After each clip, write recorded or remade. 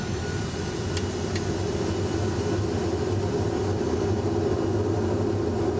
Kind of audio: recorded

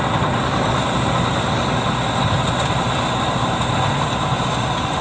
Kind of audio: recorded